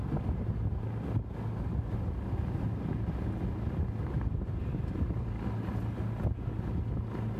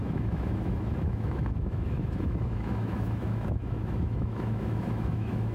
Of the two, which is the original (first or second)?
first